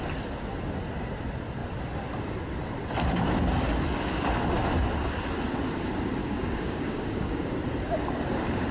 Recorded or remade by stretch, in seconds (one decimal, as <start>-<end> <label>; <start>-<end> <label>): 0.0-6.2 recorded; 6.2-7.5 remade; 7.5-8.7 recorded

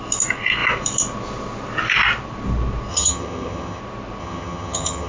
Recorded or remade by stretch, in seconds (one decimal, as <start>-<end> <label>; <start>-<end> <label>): 0.0-2.9 recorded; 2.9-3.8 remade; 3.8-4.2 recorded; 4.2-5.1 remade

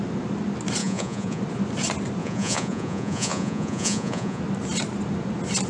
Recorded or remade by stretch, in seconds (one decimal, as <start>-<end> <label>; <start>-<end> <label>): 0.0-0.8 recorded; 0.8-1.4 remade; 1.4-2.2 recorded; 2.2-4.4 remade; 4.4-5.7 recorded

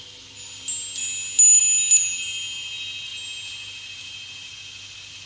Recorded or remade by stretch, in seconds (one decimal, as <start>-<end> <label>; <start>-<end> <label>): 0.0-5.3 recorded

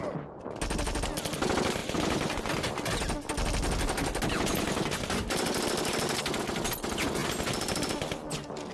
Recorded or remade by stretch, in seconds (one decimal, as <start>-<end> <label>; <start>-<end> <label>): 0.0-8.7 recorded

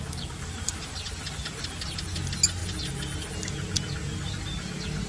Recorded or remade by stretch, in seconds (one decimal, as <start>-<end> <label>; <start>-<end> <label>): 0.0-5.1 recorded

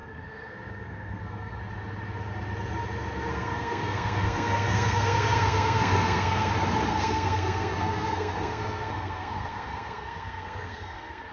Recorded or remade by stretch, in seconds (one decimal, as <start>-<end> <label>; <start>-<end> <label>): 0.0-1.6 remade; 1.6-3.3 recorded; 3.3-6.5 remade; 6.5-6.9 recorded; 6.9-11.3 remade

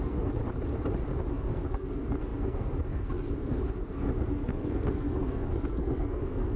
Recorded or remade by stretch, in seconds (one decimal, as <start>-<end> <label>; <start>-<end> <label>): 0.0-0.4 remade; 0.4-1.3 recorded; 1.3-6.6 remade